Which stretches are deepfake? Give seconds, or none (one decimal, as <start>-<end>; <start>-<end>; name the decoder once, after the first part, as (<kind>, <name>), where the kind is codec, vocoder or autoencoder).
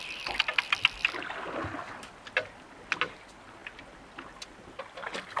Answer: none